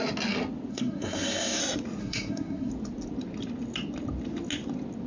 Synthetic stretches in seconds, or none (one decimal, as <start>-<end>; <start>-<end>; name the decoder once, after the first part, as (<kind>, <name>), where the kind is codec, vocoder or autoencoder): 0.7-1.6 (codec, SNAC); 2.0-2.7